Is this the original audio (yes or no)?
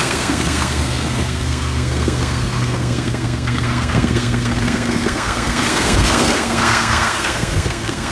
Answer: no